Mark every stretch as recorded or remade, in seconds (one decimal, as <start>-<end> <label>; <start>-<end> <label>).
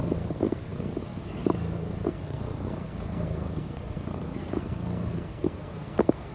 0.0-6.3 remade